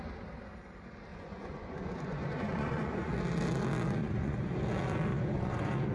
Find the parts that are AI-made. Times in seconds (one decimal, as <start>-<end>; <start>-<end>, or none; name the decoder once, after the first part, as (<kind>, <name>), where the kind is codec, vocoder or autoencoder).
1.1-3.1 (vocoder, Vocos); 4.0-4.5; 5.1-5.9